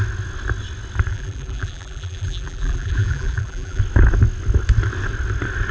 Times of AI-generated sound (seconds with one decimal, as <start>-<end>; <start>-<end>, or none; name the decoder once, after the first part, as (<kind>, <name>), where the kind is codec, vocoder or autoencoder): 1.1-3.8 (vocoder, BigVGAN v2)